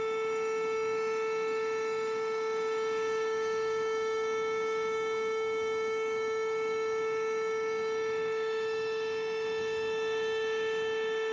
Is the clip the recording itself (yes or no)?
no